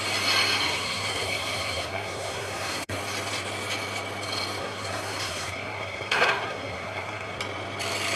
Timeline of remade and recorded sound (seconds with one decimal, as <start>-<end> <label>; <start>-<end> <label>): 0.0-0.6 recorded; 0.6-3.0 remade; 3.0-4.6 recorded; 4.6-7.4 remade; 7.4-8.2 recorded